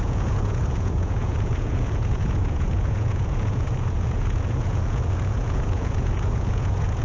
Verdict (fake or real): fake